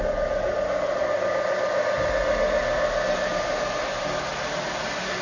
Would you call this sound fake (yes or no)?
no